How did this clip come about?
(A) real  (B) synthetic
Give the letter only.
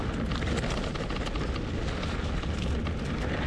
A